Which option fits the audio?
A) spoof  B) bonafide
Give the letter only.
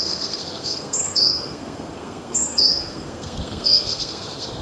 A